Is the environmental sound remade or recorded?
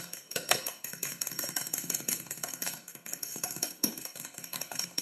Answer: remade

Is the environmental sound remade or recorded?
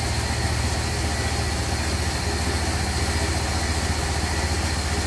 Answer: recorded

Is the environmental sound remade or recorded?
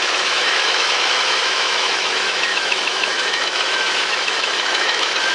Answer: remade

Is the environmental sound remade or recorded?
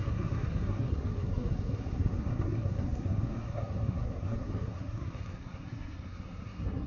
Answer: remade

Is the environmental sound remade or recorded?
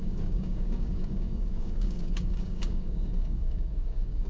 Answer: remade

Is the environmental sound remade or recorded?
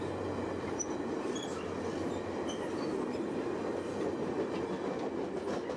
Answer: recorded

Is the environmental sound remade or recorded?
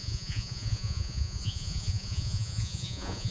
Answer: remade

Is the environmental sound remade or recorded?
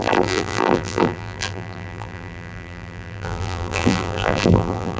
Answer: remade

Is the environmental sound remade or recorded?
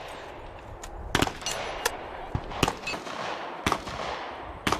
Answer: recorded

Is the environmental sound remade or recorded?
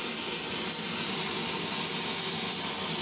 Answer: recorded